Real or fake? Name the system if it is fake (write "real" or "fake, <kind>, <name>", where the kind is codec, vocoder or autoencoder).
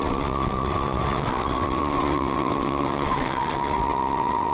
fake, vocoder, WaveNeXt